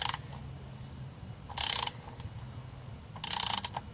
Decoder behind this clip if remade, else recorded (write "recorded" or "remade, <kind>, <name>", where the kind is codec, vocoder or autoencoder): recorded